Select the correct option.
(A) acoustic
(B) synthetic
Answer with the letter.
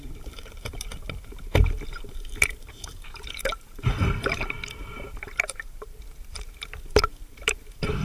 B